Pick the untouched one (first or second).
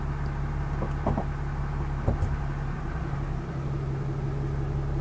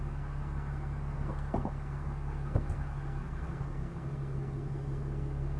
first